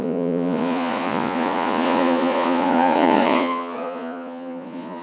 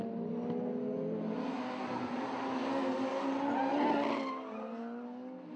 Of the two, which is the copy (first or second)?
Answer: first